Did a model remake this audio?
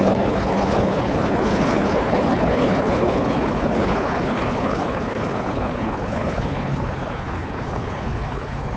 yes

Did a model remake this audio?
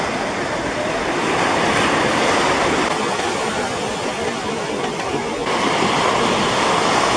no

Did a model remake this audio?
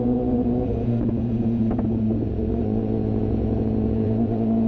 yes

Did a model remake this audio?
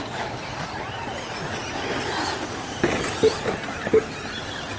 no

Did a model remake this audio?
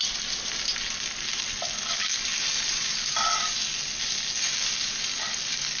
no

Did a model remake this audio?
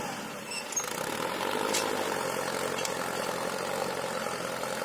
no